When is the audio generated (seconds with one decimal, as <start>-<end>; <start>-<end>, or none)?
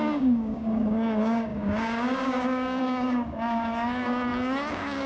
0.0-5.1